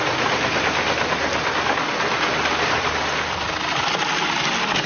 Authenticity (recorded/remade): recorded